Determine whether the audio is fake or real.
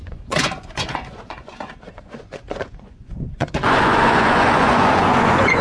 fake